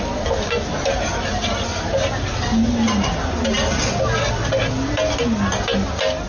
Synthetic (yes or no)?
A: no